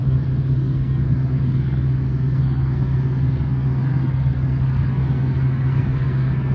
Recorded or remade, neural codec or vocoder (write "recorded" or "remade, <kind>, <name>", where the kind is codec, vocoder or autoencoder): remade, codec, SNAC